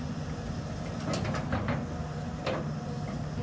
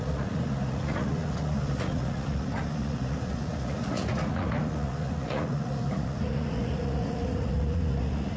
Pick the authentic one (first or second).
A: first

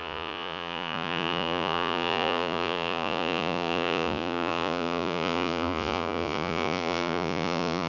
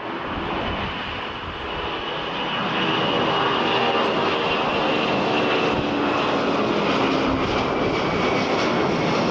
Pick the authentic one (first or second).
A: second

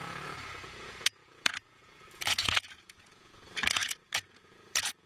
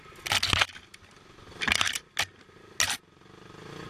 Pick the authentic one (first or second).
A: second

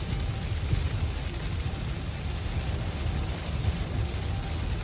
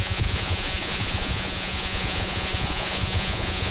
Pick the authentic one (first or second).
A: first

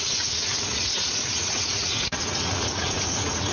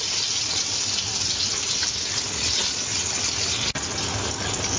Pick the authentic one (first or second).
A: second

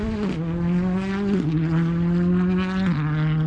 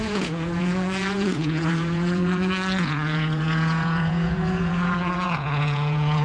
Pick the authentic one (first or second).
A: first